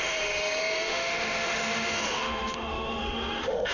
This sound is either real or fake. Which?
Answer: fake